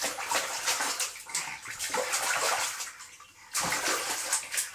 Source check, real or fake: real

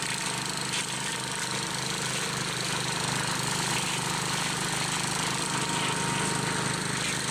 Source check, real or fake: real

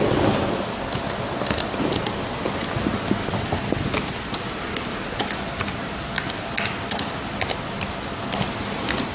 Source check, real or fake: real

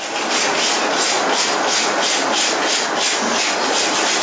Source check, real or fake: real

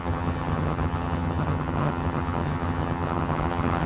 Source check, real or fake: fake